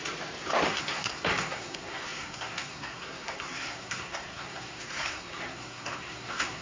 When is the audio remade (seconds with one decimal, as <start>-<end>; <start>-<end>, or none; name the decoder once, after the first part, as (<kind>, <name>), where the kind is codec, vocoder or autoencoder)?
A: 0.7-6.6 (codec, SNAC)